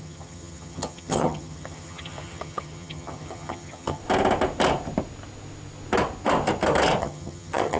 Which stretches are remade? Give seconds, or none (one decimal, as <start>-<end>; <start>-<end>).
0.0-4.0; 7.0-7.8